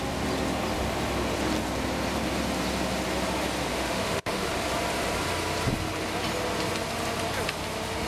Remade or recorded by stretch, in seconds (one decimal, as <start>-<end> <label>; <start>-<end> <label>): 0.0-3.7 recorded; 3.7-4.5 remade; 4.5-8.1 recorded

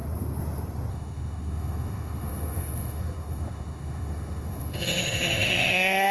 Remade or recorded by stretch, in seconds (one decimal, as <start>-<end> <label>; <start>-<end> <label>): 0.0-0.9 recorded; 0.9-6.1 remade

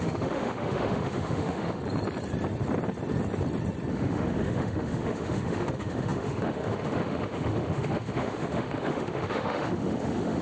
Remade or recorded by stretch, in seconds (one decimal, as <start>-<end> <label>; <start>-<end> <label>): 0.0-1.8 remade; 1.8-3.9 recorded; 3.9-10.4 remade

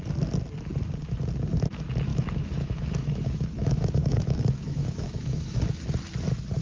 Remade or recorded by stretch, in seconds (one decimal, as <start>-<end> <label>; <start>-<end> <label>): 0.0-2.1 recorded; 2.1-5.6 remade; 5.6-6.6 recorded

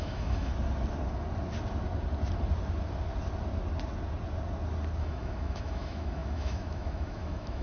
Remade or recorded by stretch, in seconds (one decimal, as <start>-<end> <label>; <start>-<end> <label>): 0.0-0.5 remade; 0.5-5.0 recorded; 5.0-7.6 remade

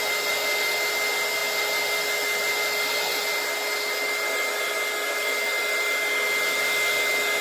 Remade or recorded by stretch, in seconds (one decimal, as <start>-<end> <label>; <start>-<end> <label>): 0.0-7.4 recorded

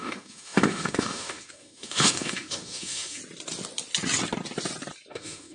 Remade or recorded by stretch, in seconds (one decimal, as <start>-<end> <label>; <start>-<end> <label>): 0.0-3.2 remade; 3.2-5.1 recorded; 5.1-5.5 remade